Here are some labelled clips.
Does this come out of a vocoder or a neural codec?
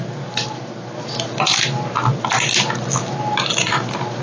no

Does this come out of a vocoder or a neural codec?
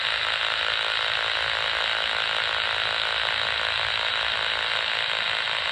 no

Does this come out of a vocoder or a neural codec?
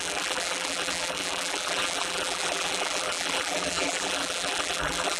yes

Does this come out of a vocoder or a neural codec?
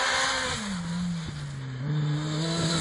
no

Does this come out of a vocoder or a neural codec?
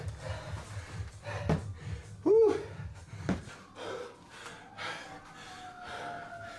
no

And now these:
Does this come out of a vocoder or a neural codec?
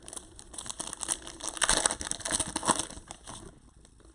no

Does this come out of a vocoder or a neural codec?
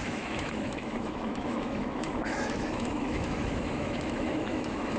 yes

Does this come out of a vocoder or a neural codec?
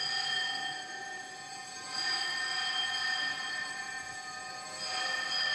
no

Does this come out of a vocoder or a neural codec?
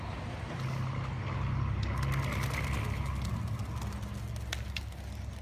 no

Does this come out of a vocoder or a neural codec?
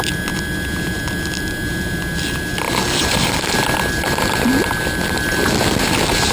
no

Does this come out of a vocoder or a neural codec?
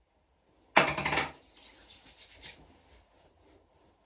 no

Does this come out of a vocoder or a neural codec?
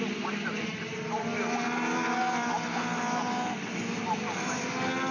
no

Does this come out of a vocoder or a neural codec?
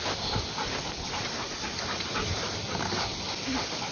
no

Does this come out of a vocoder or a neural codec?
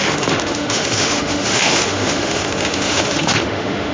yes